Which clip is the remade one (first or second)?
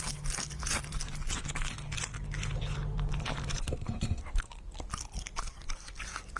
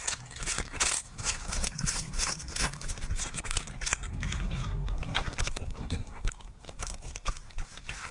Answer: second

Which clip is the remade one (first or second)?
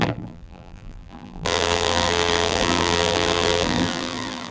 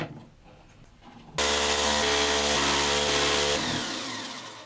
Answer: first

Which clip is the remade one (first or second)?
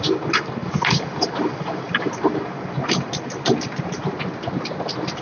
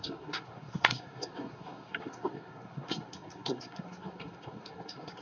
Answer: second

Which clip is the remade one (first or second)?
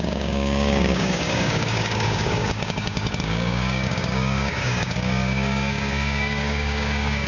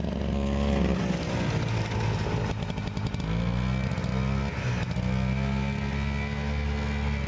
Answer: first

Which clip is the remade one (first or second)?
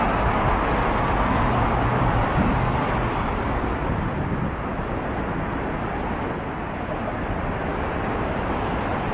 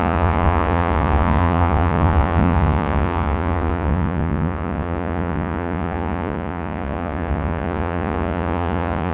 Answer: second